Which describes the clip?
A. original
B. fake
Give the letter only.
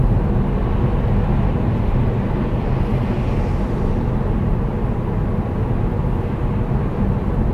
A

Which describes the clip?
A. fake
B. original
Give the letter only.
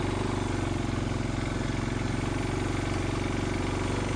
B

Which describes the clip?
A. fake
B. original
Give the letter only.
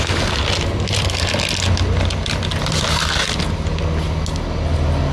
B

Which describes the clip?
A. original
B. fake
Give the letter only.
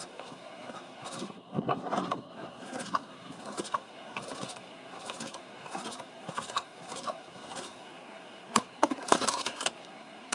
B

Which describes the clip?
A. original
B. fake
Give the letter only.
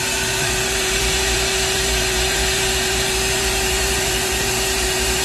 B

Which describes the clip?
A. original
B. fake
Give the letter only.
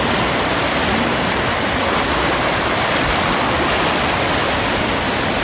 A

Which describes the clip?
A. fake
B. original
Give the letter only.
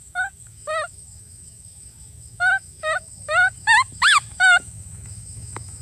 A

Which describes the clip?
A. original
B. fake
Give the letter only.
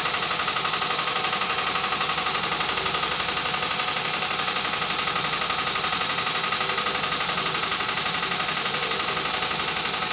A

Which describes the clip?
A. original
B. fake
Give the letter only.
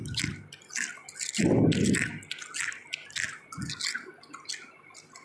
A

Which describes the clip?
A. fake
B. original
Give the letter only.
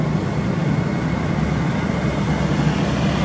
B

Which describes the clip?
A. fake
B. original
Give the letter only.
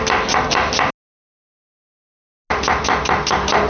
B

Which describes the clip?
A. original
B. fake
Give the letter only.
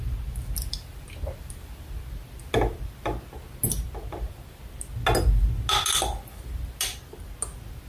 A